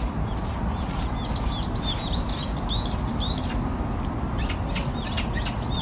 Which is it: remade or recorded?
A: recorded